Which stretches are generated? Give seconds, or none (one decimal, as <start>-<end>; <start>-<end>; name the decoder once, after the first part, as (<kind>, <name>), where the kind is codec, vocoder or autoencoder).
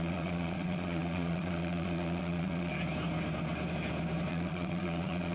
0.0-2.7 (vocoder, Vocos); 4.3-5.3